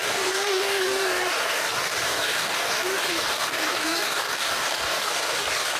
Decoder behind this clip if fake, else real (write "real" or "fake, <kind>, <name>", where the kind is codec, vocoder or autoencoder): fake, codec, DAC